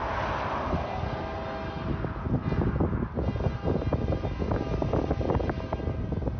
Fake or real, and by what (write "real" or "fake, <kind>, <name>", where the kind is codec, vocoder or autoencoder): real